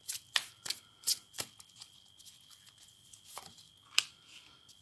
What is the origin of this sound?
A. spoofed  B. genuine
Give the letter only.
B